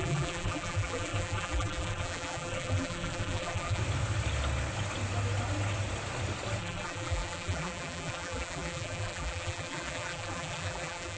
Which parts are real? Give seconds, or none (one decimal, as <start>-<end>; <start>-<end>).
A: 3.8-6.6